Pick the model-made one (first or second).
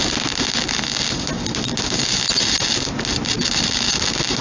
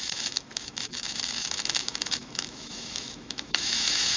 second